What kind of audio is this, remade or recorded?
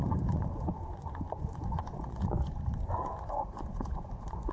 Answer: remade